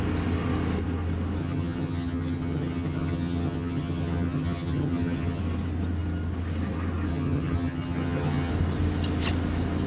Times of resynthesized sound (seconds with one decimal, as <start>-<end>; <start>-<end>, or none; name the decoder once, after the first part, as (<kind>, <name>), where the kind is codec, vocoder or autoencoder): 1.4-5.4 (vocoder, HiFi-GAN); 7.1-8.5